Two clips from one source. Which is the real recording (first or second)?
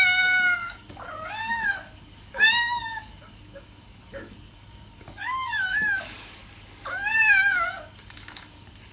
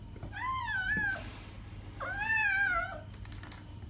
second